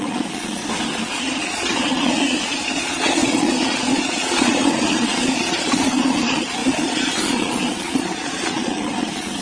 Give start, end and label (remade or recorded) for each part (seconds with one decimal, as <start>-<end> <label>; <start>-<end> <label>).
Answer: 0.0-0.6 remade; 0.6-1.2 recorded; 1.2-9.4 remade

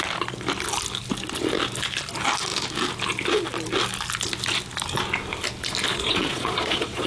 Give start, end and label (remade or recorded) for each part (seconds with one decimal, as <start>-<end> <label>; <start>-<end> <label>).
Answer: 0.0-5.9 recorded; 5.9-7.1 remade

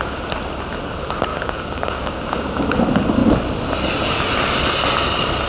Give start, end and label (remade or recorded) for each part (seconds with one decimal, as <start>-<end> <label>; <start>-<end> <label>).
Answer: 0.0-1.3 recorded; 1.3-2.6 remade; 2.6-5.5 recorded

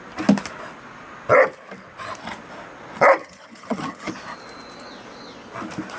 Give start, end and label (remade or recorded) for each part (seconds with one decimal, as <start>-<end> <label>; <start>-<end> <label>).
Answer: 0.0-3.2 recorded; 3.2-4.1 remade; 4.1-6.0 recorded

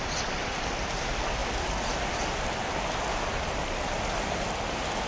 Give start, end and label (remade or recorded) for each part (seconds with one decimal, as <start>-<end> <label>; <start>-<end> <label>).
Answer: 0.0-5.1 recorded

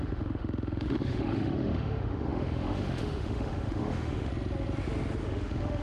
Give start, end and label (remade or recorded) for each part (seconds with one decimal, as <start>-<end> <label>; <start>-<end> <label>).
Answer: 0.0-4.3 remade; 4.3-5.2 recorded; 5.2-5.8 remade

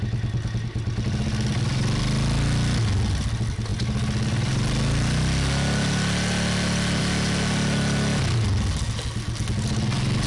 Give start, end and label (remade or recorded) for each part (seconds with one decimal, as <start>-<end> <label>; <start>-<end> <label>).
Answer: 0.0-10.3 recorded